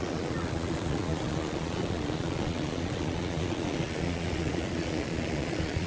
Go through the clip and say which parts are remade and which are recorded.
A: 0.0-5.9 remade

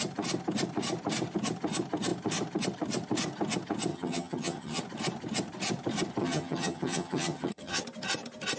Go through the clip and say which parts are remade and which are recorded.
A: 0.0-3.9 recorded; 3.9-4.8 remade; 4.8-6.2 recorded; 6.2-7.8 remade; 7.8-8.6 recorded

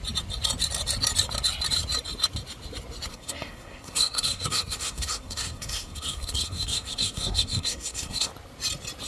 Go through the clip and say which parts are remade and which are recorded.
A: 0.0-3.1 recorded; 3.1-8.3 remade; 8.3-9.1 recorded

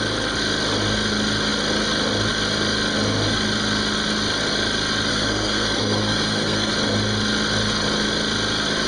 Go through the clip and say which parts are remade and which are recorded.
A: 0.0-5.1 recorded; 5.1-6.7 remade; 6.7-8.9 recorded

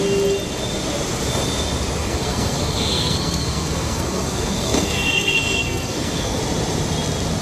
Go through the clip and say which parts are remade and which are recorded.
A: 0.0-2.0 recorded; 2.0-6.4 remade; 6.4-7.4 recorded

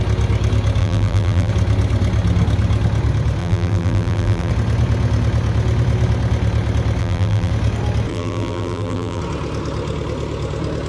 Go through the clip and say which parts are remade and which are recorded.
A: 0.0-0.8 recorded; 0.8-1.5 remade; 1.5-3.4 recorded; 3.4-4.5 remade; 4.5-7.0 recorded; 7.0-7.5 remade; 7.5-8.1 recorded; 8.1-9.2 remade; 9.2-10.9 recorded

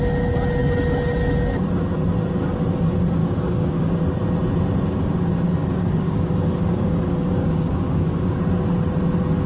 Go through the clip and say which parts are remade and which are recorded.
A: 0.0-3.2 recorded; 3.2-3.9 remade; 3.9-5.6 recorded; 5.6-8.3 remade; 8.3-9.5 recorded

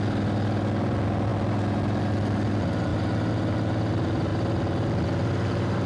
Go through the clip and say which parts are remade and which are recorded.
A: 0.0-5.9 recorded